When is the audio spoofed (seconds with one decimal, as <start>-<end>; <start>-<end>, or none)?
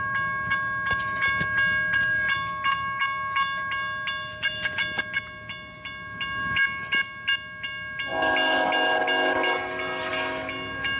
none